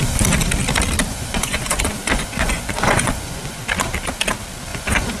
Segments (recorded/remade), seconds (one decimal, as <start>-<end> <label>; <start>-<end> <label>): 0.0-1.1 recorded; 1.1-3.6 remade; 3.6-4.7 recorded; 4.7-5.2 remade